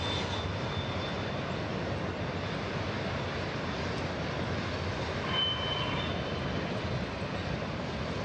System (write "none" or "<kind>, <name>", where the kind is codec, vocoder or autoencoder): none